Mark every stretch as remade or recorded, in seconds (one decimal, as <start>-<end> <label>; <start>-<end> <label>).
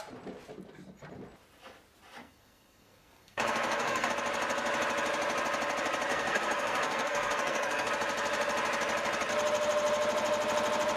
0.0-2.2 recorded; 2.2-4.1 remade; 4.1-6.1 recorded; 6.1-7.9 remade; 7.9-11.0 recorded